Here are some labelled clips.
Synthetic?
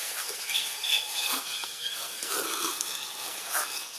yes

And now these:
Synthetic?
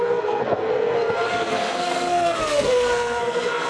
yes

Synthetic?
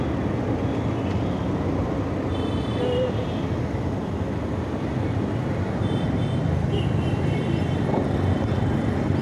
no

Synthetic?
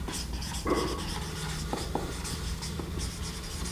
no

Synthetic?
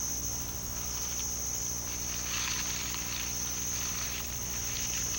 no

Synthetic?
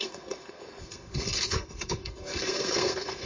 yes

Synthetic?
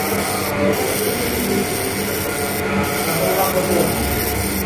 no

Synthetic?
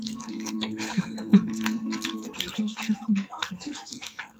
yes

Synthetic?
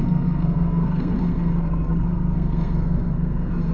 yes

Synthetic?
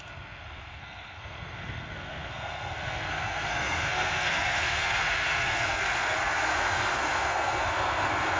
yes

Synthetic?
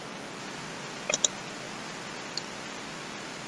no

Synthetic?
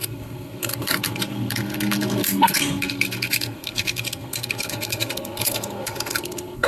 yes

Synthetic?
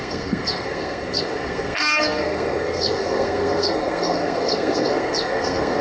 yes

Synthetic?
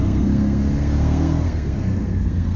yes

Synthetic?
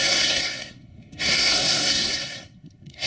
yes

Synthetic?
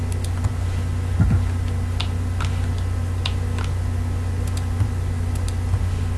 no